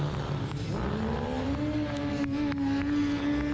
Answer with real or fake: real